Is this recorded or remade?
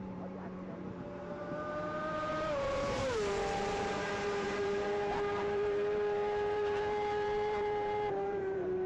remade